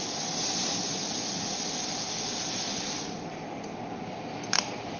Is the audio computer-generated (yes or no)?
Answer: no